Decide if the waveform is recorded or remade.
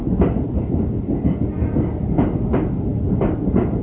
recorded